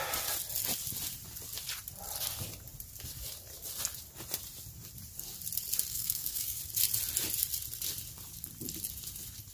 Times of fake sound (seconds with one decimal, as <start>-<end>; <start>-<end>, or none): 5.9-6.6